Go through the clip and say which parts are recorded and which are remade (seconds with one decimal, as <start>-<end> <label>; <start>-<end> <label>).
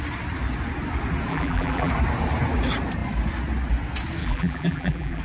0.0-1.3 recorded; 1.3-1.9 remade; 1.9-4.2 recorded; 4.2-5.2 remade